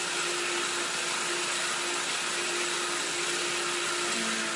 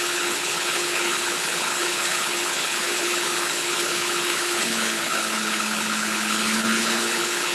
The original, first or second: first